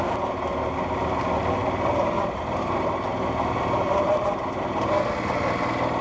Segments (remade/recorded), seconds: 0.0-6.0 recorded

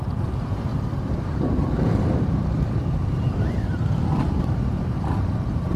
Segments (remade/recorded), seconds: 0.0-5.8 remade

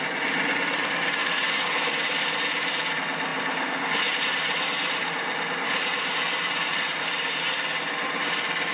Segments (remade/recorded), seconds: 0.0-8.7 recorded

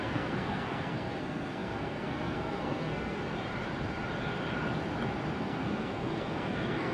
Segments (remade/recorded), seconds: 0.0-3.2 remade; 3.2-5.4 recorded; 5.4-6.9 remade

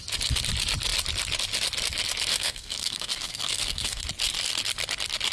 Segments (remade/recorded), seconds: 0.0-2.3 recorded; 2.3-4.0 remade; 4.0-5.3 recorded

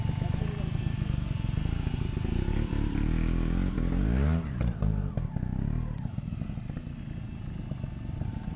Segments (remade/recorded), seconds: 0.0-8.6 recorded